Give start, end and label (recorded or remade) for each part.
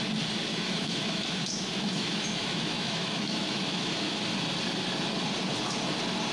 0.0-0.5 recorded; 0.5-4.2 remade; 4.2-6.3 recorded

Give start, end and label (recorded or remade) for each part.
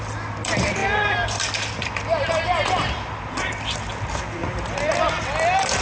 0.0-5.8 recorded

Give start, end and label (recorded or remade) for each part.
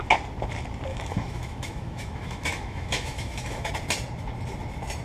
0.0-0.9 recorded; 0.9-3.7 remade; 3.7-5.0 recorded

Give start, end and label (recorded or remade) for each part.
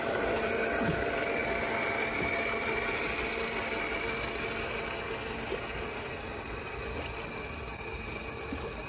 0.0-8.9 recorded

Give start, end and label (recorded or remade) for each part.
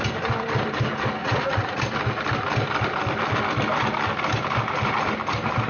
0.0-1.2 recorded; 1.2-1.8 remade; 1.8-5.7 recorded